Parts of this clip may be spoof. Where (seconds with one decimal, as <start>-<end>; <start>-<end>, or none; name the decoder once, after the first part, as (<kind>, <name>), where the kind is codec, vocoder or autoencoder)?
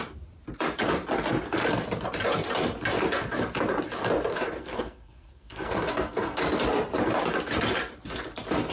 4.3-6.4 (codec, SNAC)